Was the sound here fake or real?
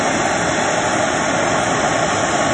real